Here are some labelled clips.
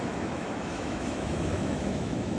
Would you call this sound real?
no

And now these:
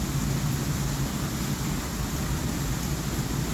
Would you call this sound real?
yes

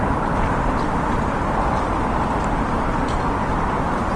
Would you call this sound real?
no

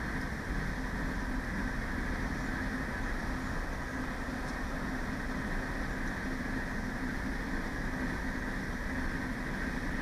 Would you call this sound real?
yes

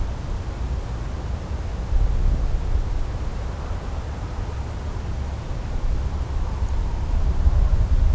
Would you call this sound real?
yes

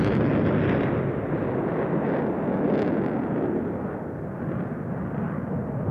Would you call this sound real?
yes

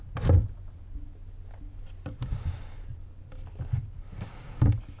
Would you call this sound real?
yes